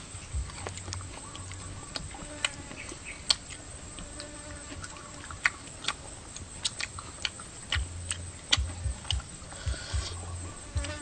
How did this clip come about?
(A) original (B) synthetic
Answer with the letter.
A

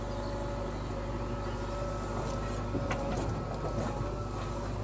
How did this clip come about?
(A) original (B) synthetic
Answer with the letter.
A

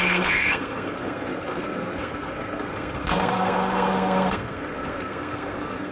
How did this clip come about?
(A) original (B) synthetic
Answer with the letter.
B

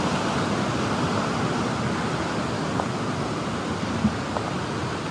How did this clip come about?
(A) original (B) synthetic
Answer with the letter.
A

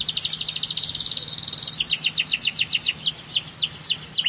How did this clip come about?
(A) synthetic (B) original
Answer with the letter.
B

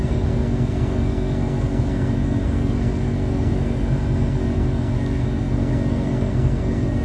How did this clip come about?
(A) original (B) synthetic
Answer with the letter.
B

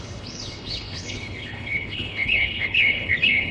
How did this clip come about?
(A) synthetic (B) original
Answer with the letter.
A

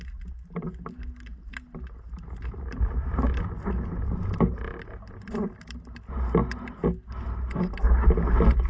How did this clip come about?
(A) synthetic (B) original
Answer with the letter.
B